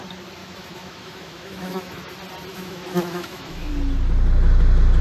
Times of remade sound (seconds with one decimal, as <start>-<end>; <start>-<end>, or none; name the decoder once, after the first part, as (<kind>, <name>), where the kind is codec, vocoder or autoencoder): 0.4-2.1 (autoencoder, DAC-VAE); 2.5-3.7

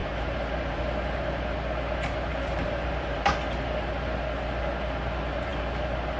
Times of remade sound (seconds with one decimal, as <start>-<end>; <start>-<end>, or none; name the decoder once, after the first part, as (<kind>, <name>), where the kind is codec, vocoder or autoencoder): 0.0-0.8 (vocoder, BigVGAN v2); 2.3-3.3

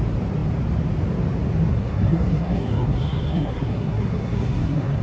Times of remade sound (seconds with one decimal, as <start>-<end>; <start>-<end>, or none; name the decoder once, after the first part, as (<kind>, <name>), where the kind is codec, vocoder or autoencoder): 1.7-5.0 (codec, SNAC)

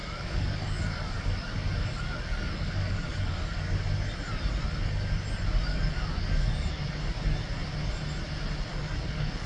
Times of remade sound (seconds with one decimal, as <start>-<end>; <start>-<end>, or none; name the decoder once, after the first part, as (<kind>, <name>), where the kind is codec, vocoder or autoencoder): 0.0-3.5 (codec, DAC); 5.7-7.0; 8.7-9.5

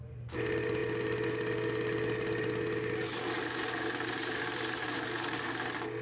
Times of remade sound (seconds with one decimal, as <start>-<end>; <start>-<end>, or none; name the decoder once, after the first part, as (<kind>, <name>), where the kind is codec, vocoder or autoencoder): none

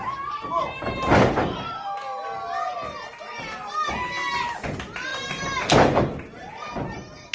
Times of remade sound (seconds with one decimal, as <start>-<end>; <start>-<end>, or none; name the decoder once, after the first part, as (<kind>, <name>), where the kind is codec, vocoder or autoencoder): 5.1-6.5 (vocoder, BigVGAN v2)